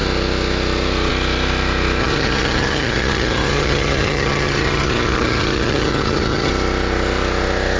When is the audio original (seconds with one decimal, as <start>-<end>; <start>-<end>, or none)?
0.0-2.0; 6.5-7.8